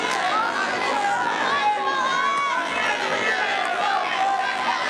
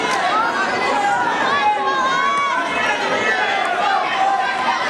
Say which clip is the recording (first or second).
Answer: second